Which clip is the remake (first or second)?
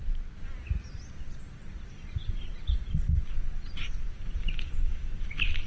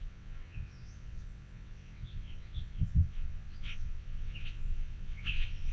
second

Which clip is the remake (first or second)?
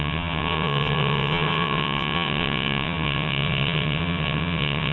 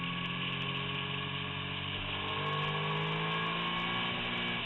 first